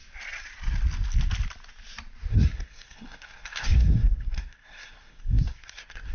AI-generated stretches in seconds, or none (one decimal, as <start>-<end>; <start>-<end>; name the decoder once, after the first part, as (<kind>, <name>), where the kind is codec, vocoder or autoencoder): 2.3-6.1 (codec, SNAC)